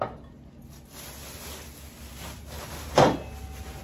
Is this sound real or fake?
real